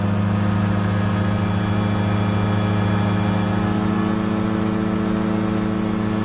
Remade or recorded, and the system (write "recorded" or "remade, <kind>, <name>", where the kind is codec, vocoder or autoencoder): recorded